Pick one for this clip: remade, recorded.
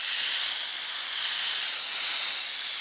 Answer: recorded